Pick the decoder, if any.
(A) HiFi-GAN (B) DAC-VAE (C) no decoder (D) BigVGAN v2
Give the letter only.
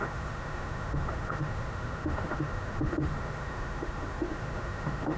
B